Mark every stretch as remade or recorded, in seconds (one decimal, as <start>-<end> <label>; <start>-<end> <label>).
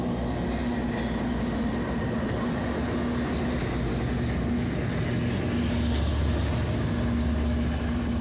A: 0.0-8.2 recorded